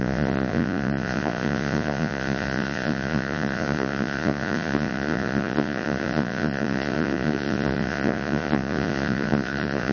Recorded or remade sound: remade